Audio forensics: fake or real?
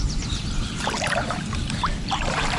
fake